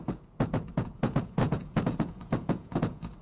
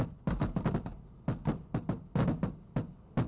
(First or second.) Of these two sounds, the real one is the second